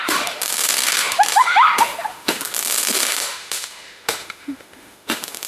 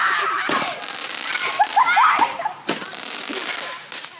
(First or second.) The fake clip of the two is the first